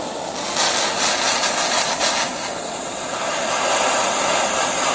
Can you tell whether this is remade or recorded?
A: recorded